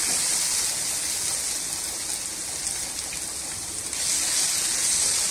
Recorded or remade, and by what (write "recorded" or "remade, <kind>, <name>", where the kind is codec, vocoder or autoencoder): recorded